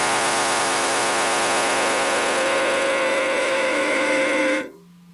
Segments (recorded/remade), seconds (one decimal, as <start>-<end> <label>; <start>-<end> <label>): 0.0-0.6 recorded; 0.6-1.0 remade; 1.0-3.4 recorded; 3.4-4.2 remade; 4.2-5.1 recorded